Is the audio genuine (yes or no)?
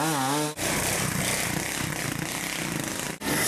yes